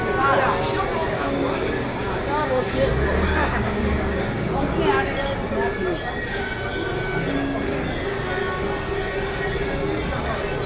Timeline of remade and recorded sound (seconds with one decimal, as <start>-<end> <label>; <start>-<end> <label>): 0.0-1.2 recorded; 1.2-4.7 remade; 4.7-10.7 recorded